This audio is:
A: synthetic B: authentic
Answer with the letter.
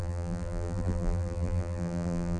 A